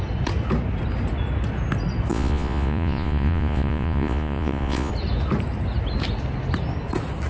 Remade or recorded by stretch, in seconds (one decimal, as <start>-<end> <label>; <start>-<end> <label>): 0.0-2.1 recorded; 2.1-4.9 remade; 4.9-7.3 recorded